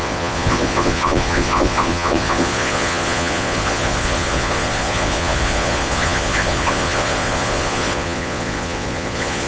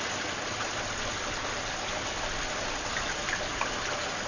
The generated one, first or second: first